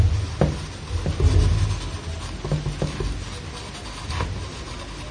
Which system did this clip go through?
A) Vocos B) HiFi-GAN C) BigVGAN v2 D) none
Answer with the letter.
D